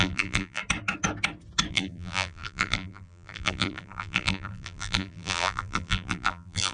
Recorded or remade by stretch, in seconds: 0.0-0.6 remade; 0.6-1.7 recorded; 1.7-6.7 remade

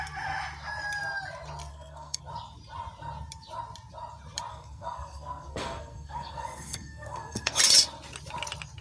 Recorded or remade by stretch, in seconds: 0.0-1.7 recorded; 1.7-2.2 remade; 2.2-4.5 recorded; 4.5-7.6 remade; 7.6-8.8 recorded

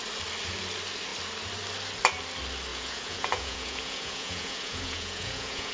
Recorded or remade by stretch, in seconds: 0.0-2.7 recorded; 2.7-5.7 remade

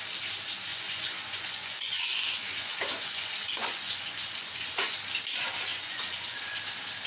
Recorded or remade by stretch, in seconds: 0.0-0.7 recorded; 0.7-5.0 remade; 5.0-5.7 recorded; 5.7-6.6 remade; 6.6-7.1 recorded

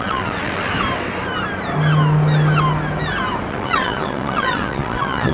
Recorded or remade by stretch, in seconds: 0.0-0.7 remade; 0.7-3.5 recorded; 3.5-5.3 remade

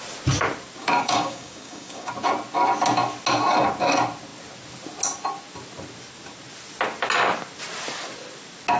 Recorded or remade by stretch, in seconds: 0.0-0.8 recorded; 0.8-2.1 remade; 2.1-8.8 recorded

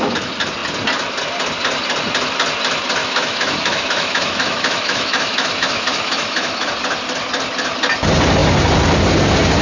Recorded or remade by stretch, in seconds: 0.0-3.0 recorded; 3.0-6.7 remade; 6.7-9.6 recorded

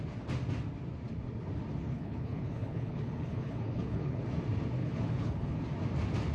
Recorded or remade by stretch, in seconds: 0.0-1.8 recorded; 1.8-4.2 remade; 4.2-4.8 recorded; 4.8-5.6 remade; 5.6-6.3 recorded